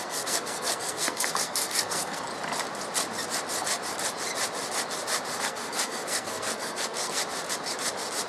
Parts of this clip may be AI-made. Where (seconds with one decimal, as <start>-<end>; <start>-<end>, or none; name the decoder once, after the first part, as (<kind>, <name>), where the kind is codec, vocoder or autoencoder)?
0.0-2.3 (codec, SNAC); 5.4-7.2